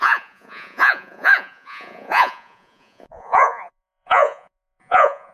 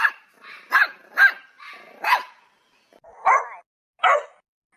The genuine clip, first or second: second